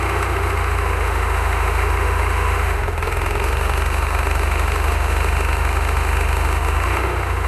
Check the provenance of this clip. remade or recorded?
remade